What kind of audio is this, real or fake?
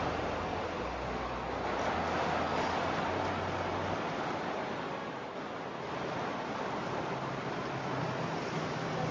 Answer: real